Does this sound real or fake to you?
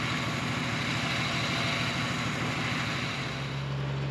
real